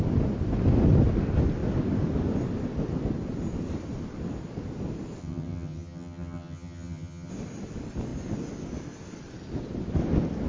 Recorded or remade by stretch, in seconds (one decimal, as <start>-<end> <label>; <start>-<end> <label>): 0.0-5.2 recorded; 5.2-7.3 remade; 7.3-10.5 recorded